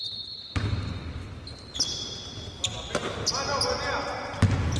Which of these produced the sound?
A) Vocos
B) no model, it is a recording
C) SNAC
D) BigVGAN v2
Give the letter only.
B